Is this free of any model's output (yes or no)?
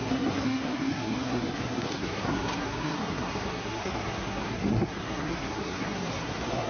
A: no